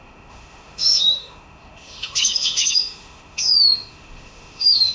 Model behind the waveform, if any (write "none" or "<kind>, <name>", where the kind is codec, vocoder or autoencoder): autoencoder, DAC-VAE